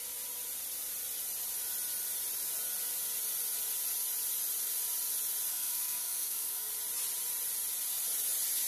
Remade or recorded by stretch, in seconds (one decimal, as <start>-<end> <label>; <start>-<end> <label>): 0.0-5.5 recorded; 5.5-6.7 remade; 6.7-8.7 recorded